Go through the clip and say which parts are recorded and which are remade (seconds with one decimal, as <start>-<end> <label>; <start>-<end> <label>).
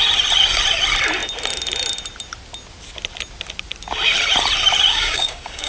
0.0-4.9 recorded; 4.9-5.7 remade